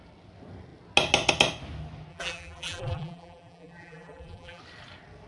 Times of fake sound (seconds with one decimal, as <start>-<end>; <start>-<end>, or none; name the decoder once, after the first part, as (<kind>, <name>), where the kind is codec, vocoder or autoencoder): 2.1-4.6 (vocoder, BigVGAN v2)